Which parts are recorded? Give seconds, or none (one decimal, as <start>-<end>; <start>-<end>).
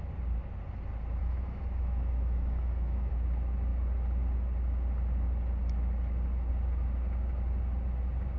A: 0.0-1.2; 3.1-8.4